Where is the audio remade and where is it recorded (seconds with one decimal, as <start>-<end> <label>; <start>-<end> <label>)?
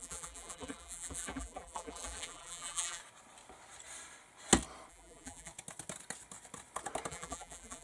0.0-3.0 remade; 3.0-4.9 recorded; 4.9-5.5 remade; 5.5-7.1 recorded; 7.1-7.8 remade